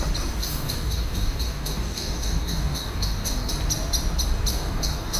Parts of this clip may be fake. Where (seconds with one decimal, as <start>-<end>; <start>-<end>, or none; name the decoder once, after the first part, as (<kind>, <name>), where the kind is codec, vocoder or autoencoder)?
0.4-3.5 (codec, DAC); 4.5-5.2